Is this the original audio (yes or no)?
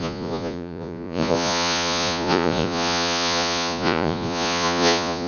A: no